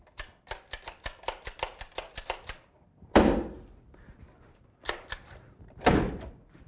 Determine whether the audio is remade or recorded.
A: recorded